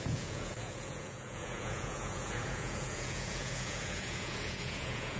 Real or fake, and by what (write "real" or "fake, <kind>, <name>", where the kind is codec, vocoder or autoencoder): fake, vocoder, Vocos